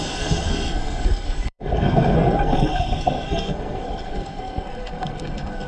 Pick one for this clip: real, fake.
fake